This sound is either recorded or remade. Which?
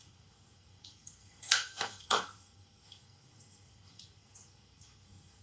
remade